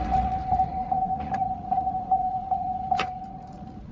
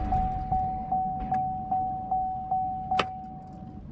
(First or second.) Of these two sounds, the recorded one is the second